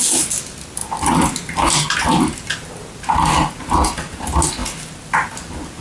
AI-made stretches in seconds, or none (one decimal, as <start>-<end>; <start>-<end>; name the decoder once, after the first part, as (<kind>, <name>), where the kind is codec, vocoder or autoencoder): none